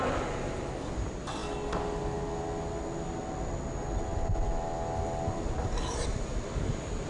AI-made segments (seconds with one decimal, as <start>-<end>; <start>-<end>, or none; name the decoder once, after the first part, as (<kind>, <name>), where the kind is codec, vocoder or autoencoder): none

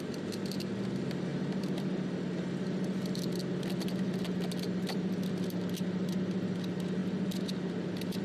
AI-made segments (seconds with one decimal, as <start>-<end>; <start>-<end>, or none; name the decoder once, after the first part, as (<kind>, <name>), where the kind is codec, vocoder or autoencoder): none

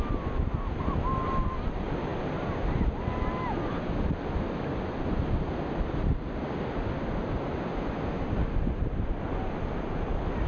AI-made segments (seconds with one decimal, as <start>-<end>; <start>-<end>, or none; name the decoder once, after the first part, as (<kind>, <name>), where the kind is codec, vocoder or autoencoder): none

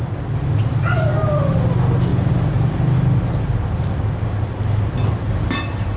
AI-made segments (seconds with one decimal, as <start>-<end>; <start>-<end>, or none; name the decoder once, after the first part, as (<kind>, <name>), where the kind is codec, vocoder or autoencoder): none